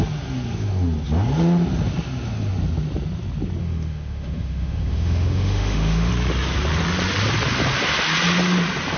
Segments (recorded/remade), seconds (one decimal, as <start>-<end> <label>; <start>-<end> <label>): 0.0-3.6 recorded; 3.6-6.1 remade; 6.1-9.0 recorded